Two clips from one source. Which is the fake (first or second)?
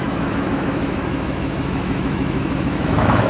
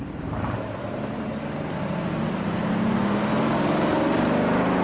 first